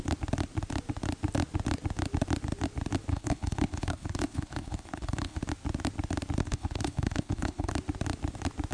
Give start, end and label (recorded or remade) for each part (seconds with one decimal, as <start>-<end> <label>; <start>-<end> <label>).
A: 0.0-3.1 recorded; 3.1-5.4 remade; 5.4-6.4 recorded; 6.4-7.7 remade; 7.7-8.7 recorded